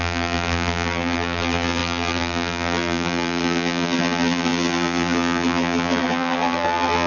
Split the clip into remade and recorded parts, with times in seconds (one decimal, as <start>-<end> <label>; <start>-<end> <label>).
0.0-7.1 remade